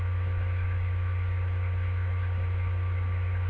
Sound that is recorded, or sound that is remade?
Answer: recorded